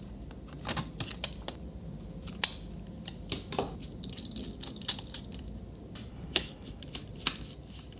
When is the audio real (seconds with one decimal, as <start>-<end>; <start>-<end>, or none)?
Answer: 0.0-6.1; 6.8-8.0